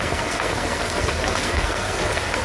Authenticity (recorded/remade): remade